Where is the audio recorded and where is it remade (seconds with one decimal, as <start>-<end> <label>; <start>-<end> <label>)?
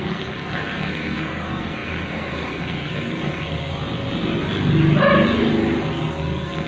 0.0-3.7 remade; 3.7-5.9 recorded; 5.9-6.7 remade